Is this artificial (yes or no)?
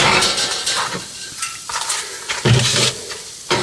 no